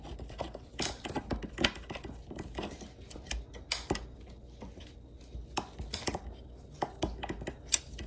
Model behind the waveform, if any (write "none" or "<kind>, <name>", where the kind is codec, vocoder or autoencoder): none